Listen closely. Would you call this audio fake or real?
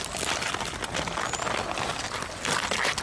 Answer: real